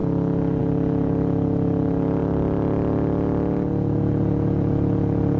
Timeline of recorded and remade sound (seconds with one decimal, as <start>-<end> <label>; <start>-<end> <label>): 0.0-5.4 recorded